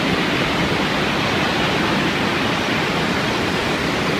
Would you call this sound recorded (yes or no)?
yes